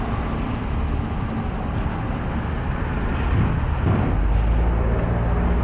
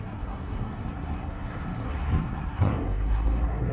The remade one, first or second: second